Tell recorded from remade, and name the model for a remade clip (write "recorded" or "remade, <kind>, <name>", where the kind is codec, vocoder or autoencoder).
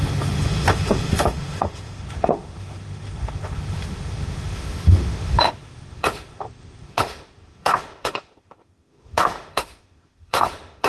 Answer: remade, autoencoder, DAC-VAE